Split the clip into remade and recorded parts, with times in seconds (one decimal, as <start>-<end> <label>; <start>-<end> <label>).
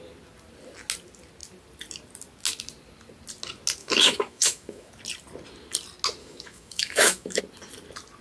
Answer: 0.0-3.8 recorded; 3.8-4.9 remade; 4.9-6.2 recorded; 6.2-7.4 remade; 7.4-8.2 recorded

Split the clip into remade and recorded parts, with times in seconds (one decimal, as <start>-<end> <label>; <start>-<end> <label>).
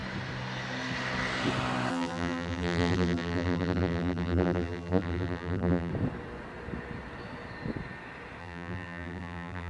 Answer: 0.0-1.9 recorded; 1.9-5.9 remade; 5.9-8.4 recorded; 8.4-9.7 remade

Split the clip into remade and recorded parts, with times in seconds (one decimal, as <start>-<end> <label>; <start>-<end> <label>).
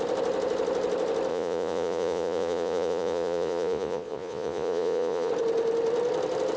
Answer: 0.0-1.3 recorded; 1.3-5.3 remade; 5.3-6.6 recorded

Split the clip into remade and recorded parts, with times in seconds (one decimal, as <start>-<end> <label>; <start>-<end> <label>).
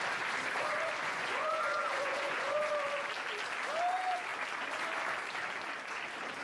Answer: 0.0-1.0 recorded; 1.0-2.7 remade; 2.7-6.4 recorded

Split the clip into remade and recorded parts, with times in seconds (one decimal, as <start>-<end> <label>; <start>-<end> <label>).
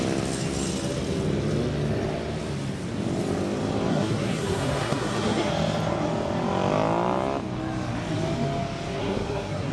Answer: 0.0-3.9 recorded; 3.9-5.5 remade; 5.5-9.0 recorded; 9.0-9.7 remade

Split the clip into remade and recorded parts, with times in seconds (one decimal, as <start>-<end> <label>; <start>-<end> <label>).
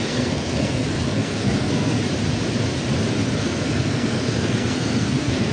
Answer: 0.0-2.0 remade; 2.0-3.4 recorded; 3.4-5.5 remade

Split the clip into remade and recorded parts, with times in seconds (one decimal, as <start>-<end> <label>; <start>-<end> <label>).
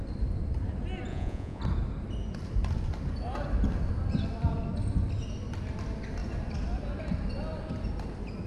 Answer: 0.0-1.1 recorded; 1.1-1.6 remade; 1.6-8.5 recorded